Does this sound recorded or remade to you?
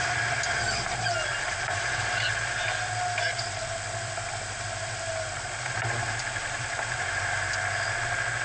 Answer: recorded